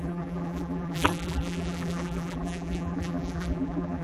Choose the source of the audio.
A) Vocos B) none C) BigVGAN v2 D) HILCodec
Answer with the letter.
C